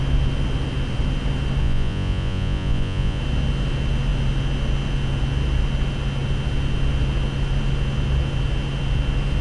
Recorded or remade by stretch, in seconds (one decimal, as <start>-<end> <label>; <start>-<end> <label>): 0.0-1.6 recorded; 1.6-3.2 remade; 3.2-9.4 recorded